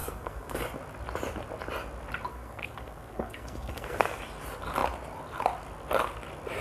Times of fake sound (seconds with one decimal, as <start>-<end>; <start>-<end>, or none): 0.0-0.6; 2.3-4.2